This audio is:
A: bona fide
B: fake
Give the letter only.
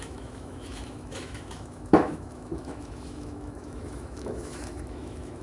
B